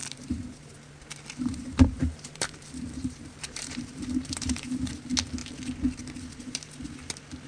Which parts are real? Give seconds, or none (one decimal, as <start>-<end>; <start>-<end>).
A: 0.6-1.5; 4.9-7.5